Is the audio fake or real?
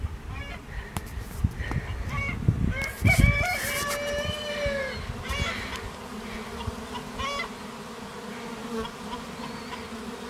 real